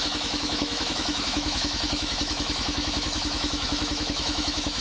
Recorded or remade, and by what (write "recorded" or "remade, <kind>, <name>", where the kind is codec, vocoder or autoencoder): remade, autoencoder, DAC-VAE